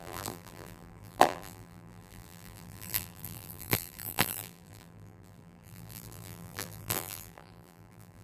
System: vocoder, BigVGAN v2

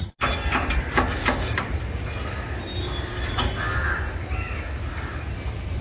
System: none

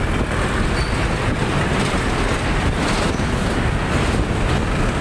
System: none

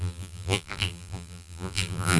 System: vocoder, BigVGAN v2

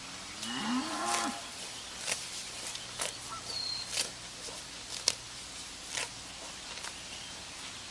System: vocoder, BigVGAN v2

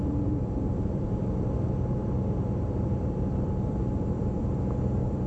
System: vocoder, BigVGAN v2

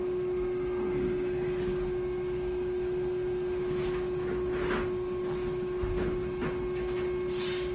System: none